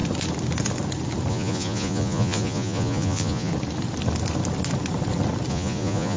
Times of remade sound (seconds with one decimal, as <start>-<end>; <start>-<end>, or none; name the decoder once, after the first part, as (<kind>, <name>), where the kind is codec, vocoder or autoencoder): 1.3-3.5 (vocoder, Vocos); 5.5-6.2

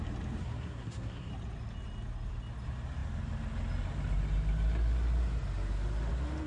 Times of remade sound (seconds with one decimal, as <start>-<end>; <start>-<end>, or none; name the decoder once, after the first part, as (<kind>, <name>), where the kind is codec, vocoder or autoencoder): 0.4-1.3 (codec, SNAC)

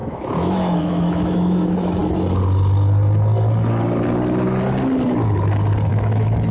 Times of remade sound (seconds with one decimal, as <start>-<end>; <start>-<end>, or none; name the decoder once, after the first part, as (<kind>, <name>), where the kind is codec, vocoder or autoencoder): 0.0-2.0 (autoencoder, DAC-VAE); 5.9-6.5